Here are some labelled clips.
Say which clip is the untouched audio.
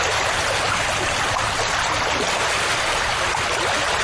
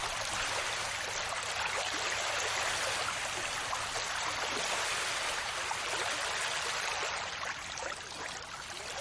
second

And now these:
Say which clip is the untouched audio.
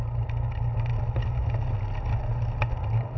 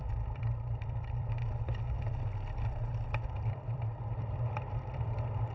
first